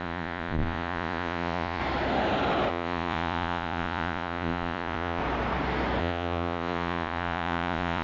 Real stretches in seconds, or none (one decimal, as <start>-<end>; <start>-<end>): 1.8-2.7; 5.2-6.0